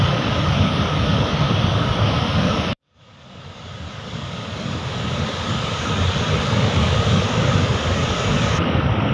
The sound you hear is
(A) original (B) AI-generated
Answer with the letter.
B